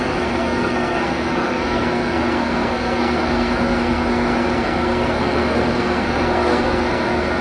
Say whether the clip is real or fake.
fake